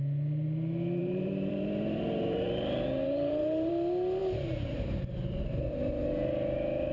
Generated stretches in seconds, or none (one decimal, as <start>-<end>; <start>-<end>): 1.0-3.7; 4.2-5.0